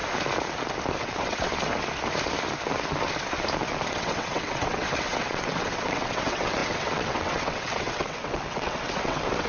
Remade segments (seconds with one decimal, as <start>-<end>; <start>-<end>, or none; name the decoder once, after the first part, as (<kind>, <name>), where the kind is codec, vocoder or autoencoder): 1.0-1.5 (vocoder, WaveNeXt); 3.9-9.5